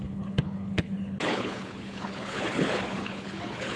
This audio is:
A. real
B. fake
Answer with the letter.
B